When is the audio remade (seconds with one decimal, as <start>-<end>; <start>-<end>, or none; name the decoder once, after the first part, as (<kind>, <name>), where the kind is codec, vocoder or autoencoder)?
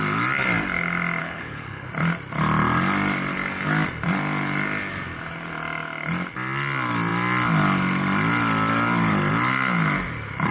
1.2-1.9 (codec, HILCodec)